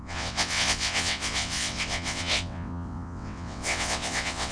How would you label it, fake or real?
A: fake